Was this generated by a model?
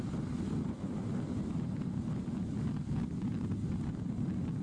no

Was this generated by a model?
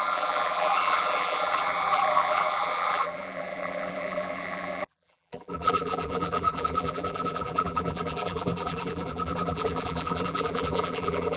yes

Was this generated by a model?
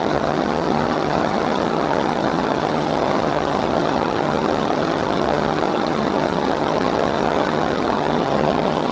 yes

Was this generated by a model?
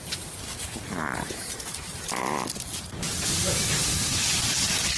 yes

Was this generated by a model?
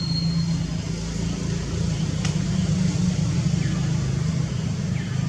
no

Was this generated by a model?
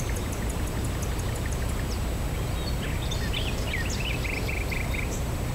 no